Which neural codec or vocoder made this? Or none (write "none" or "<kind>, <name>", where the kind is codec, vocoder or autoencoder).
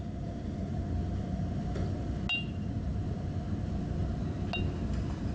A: none